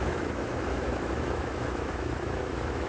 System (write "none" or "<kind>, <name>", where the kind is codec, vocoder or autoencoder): autoencoder, DAC-VAE